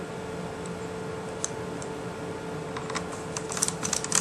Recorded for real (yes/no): yes